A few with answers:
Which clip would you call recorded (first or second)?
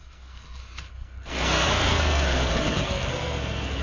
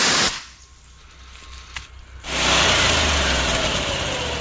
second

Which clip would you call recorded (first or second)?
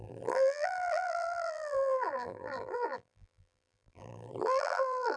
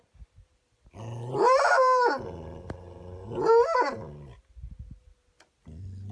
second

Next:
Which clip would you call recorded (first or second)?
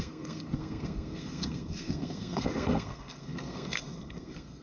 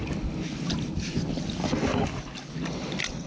second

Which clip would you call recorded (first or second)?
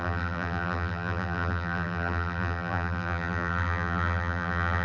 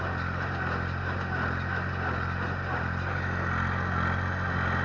second